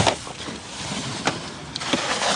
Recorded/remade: recorded